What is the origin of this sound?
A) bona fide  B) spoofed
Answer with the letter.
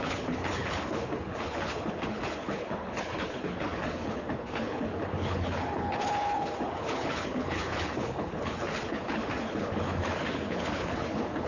B